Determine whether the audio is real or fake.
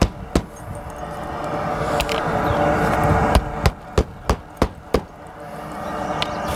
real